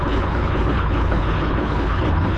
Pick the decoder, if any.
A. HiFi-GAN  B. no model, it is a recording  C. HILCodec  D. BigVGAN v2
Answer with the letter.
C